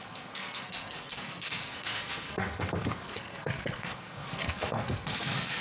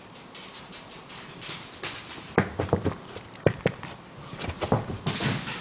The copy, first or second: first